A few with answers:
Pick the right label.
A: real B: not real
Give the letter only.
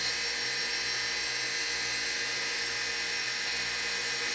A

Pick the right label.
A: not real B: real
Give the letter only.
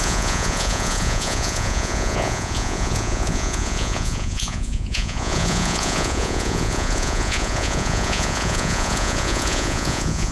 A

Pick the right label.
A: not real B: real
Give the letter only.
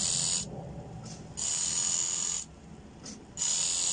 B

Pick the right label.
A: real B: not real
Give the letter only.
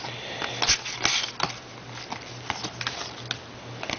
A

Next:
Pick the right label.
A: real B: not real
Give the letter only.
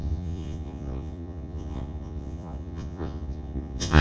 B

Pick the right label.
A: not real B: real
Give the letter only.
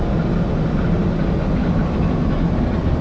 B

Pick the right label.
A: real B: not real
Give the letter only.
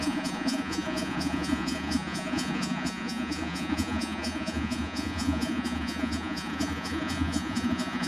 B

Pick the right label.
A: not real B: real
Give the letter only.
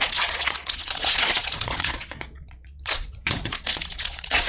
A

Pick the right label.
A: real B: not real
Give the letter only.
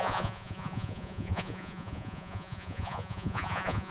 B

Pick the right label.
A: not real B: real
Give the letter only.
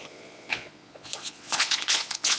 A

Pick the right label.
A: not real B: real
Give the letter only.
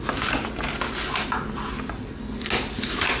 B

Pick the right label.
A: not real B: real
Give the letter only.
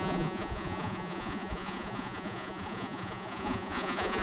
A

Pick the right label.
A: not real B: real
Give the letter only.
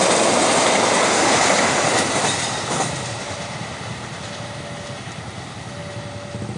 B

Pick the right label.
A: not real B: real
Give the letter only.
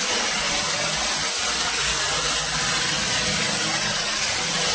B